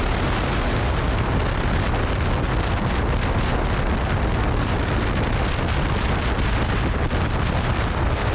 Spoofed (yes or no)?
no